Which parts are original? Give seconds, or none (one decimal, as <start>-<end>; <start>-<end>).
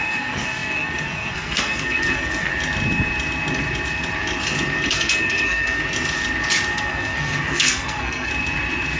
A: 2.5-4.9; 5.8-6.7; 8.3-9.0